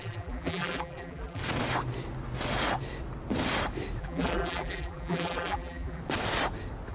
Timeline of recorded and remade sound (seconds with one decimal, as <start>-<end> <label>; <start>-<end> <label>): 0.0-1.4 remade; 1.4-4.0 recorded; 4.0-6.0 remade; 6.0-6.9 recorded